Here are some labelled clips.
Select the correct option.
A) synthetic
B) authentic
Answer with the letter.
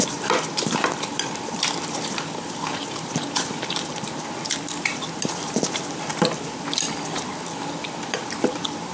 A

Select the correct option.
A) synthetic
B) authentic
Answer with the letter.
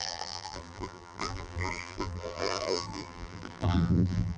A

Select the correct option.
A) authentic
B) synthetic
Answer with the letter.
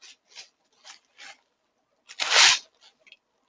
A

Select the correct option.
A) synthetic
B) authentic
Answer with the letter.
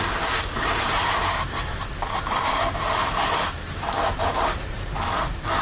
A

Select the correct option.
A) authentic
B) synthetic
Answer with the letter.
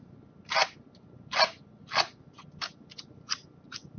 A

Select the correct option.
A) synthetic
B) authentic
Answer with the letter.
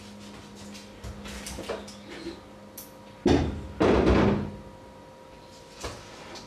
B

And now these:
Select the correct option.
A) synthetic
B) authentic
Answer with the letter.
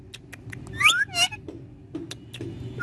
B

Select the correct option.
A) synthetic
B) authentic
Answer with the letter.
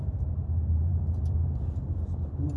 A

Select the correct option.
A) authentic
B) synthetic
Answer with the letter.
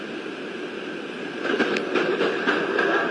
A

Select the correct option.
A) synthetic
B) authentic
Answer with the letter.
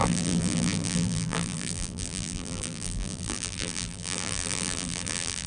A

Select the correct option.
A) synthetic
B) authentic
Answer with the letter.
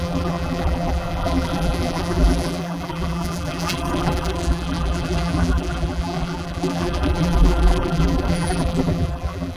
A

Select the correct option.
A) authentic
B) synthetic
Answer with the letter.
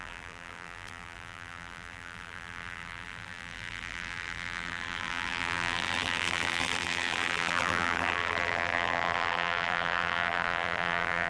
B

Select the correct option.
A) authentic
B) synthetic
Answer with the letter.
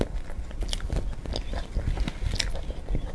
A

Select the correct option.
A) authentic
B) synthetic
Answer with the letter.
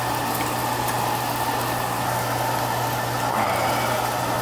A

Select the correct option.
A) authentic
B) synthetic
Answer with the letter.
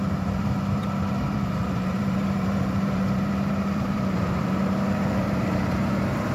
B